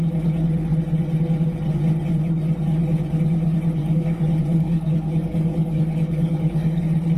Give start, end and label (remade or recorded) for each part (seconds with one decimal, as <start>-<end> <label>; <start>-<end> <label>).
0.0-3.8 recorded; 3.8-6.8 remade; 6.8-7.2 recorded